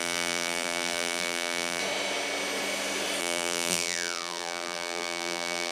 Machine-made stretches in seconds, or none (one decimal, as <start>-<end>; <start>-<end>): 0.0-1.8; 3.2-5.7